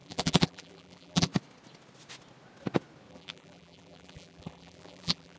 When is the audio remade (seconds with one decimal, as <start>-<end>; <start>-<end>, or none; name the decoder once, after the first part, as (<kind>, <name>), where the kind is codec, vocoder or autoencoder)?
0.0-1.3 (vocoder, BigVGAN v2); 3.1-5.4

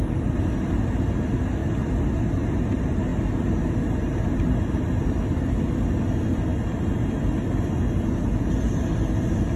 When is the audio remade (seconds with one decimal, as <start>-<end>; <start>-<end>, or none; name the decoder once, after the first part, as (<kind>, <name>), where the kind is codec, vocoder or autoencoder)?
1.6-2.1 (vocoder, BigVGAN v2)

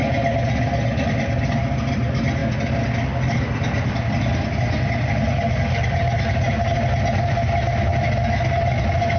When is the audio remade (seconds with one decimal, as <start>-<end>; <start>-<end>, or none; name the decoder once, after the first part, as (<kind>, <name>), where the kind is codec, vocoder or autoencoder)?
none

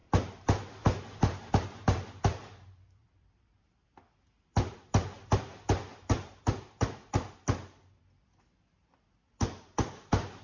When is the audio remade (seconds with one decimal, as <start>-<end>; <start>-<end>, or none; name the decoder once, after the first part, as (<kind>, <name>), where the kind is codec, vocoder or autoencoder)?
none

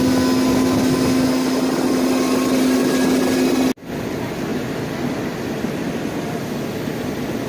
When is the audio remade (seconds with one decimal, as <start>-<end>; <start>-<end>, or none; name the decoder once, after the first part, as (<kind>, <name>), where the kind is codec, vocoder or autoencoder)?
4.5-5.8 (vocoder, BigVGAN v2)

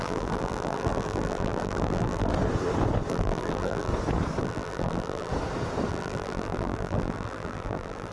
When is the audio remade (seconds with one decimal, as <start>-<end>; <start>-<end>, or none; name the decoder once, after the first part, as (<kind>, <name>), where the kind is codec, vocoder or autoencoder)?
0.0-2.3 (vocoder, BigVGAN v2); 3.1-3.9; 4.4-5.3; 5.9-8.1

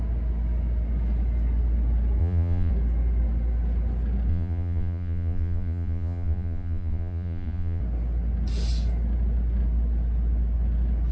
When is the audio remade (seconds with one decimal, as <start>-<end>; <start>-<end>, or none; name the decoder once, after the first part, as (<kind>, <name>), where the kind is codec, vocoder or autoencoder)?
2.2-2.7 (vocoder, Vocos); 4.3-7.8

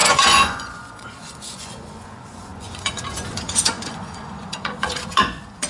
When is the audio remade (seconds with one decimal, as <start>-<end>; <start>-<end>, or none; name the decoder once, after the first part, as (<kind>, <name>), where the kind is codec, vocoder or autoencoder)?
0.0-5.7 (vocoder, Vocos)